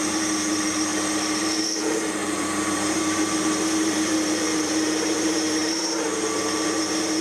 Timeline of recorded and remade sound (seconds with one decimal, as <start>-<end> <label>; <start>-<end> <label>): 0.0-7.2 remade